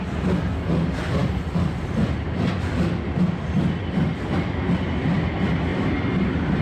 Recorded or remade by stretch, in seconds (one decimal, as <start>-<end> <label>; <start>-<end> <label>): 0.0-6.6 recorded